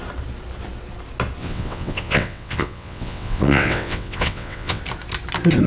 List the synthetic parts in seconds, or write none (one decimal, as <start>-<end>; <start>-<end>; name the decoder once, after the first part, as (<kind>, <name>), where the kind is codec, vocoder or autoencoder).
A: 1.4-4.8 (vocoder, WaveNeXt)